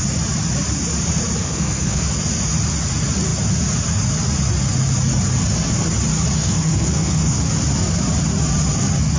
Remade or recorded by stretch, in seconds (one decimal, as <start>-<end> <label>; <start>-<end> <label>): 0.0-1.4 recorded; 1.4-2.0 remade; 2.0-6.4 recorded; 6.4-7.4 remade; 7.4-9.2 recorded